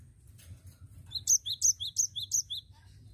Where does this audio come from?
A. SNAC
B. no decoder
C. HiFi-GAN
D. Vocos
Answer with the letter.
B